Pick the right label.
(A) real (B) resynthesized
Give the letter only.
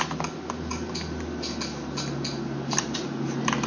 A